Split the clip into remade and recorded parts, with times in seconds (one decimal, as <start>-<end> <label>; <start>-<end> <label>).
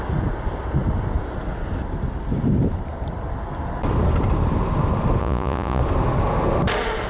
0.0-5.2 recorded; 5.2-5.8 remade; 5.8-7.1 recorded